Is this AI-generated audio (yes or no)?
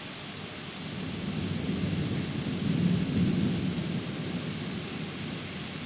no